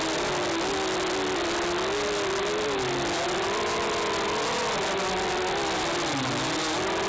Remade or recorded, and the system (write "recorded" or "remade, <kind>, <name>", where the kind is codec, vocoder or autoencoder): recorded